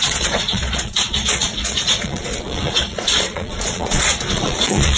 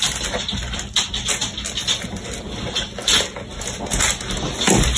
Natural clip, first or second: second